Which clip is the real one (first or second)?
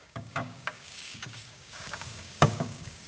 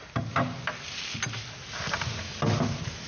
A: second